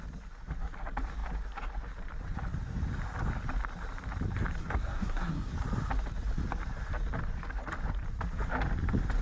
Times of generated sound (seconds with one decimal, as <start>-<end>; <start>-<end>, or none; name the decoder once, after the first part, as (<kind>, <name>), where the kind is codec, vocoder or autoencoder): 4.6-5.5 (codec, SNAC)